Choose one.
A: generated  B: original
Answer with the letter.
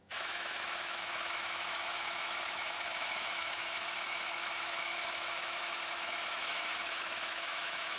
A